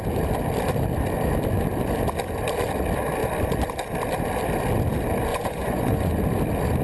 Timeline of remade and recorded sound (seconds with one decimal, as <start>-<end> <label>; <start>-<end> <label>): 0.0-5.3 recorded; 5.3-6.1 remade; 6.1-6.8 recorded